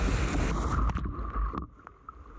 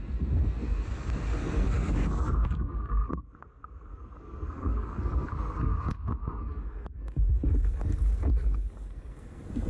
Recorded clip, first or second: first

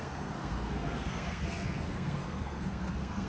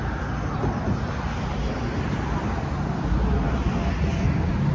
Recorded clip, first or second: second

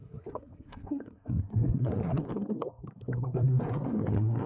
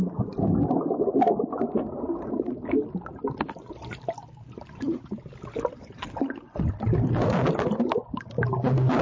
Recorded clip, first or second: second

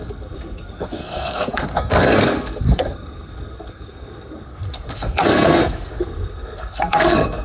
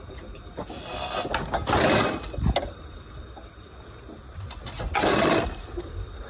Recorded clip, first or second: second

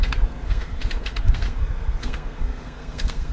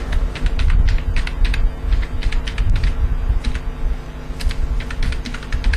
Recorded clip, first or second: second